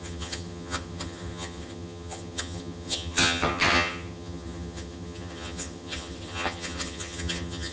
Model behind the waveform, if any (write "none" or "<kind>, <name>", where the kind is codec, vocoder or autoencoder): vocoder, HiFi-GAN